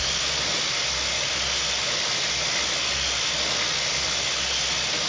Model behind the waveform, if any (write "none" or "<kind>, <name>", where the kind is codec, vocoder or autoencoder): none